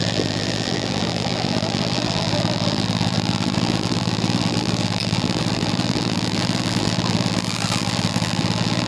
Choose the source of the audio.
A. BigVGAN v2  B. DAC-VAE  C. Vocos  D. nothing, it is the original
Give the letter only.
A